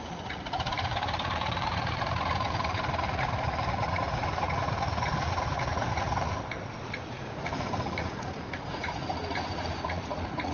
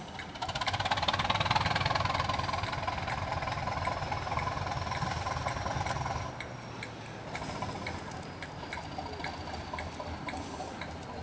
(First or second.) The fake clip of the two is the first